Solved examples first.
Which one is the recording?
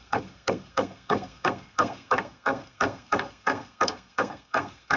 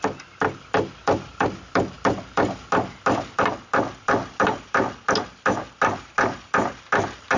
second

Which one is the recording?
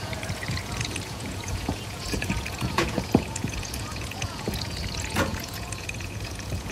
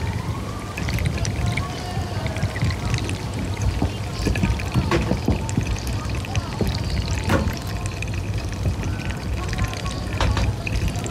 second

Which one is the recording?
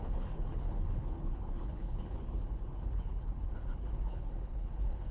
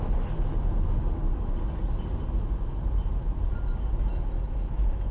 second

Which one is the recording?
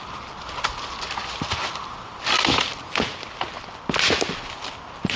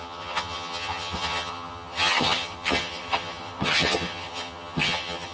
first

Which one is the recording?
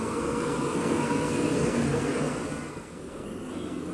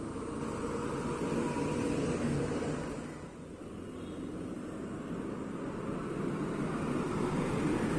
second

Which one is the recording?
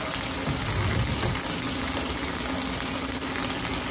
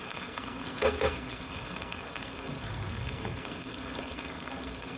first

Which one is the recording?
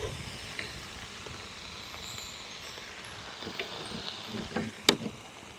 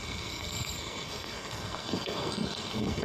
first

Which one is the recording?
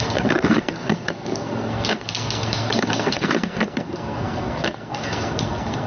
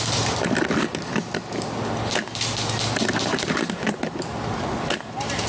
second